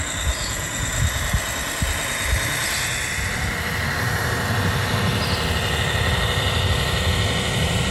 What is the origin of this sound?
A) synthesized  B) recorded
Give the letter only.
B